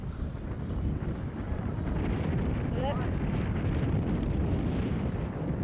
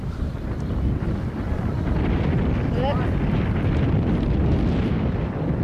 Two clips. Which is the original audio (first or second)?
second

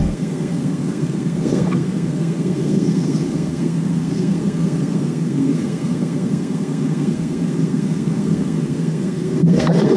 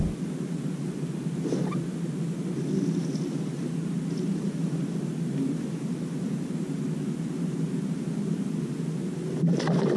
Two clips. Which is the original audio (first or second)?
second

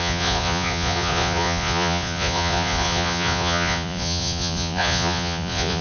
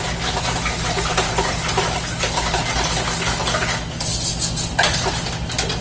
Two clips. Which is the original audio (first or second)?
second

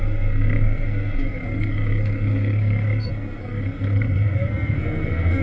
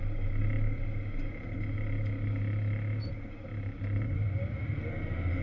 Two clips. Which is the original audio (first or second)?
second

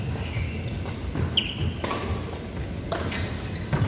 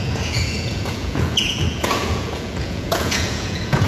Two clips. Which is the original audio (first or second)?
first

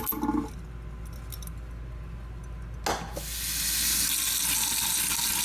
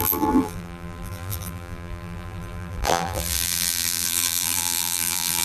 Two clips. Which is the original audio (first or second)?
first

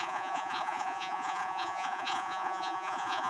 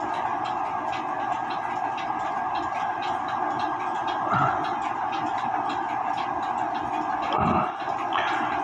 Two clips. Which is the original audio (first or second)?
second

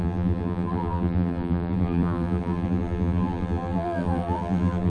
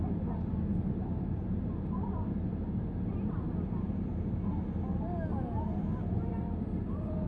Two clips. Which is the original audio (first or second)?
second